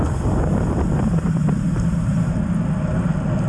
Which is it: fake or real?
real